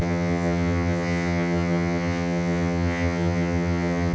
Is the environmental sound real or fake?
fake